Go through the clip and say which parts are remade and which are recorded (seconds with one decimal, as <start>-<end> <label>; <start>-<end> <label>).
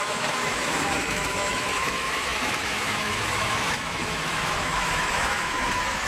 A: 0.0-6.1 remade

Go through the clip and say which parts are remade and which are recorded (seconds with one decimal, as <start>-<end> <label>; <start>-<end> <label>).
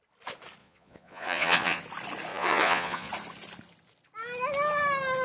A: 0.0-0.6 recorded; 0.6-1.8 remade; 1.8-2.3 recorded; 2.3-3.1 remade; 3.1-5.2 recorded